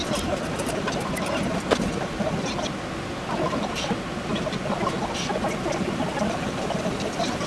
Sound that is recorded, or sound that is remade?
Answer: recorded